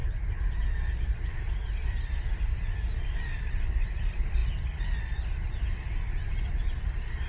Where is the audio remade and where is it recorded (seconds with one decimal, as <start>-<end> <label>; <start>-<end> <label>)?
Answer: 0.0-7.3 recorded